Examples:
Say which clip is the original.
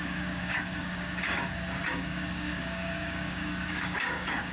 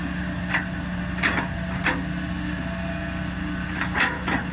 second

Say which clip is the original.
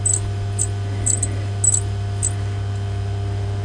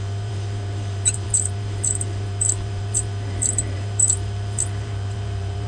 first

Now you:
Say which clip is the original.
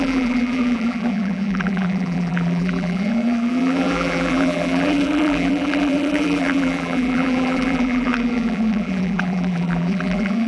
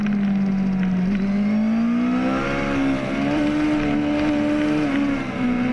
second